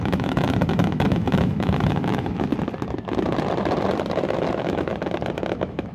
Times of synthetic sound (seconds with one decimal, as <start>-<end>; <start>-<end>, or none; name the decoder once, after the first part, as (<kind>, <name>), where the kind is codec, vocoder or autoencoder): 0.0-2.5 (autoencoder, DAC-VAE); 4.5-4.9; 5.5-5.9